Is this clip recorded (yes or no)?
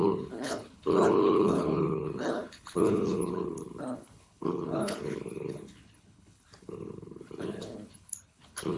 no